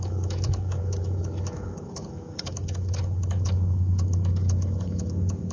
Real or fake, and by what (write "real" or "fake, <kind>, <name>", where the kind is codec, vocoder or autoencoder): fake, autoencoder, DAC-VAE